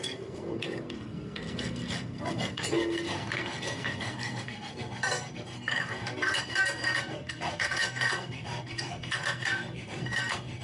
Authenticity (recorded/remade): remade